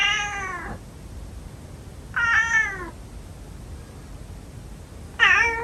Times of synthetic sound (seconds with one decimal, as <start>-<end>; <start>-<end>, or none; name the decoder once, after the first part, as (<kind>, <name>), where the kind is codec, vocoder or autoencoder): none